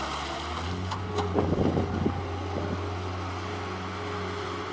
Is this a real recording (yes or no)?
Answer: yes